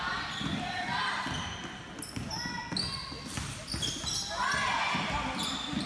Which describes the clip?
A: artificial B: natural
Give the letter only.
B